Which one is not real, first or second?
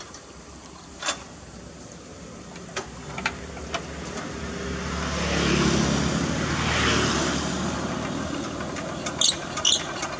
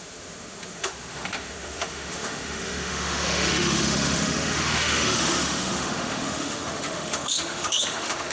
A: second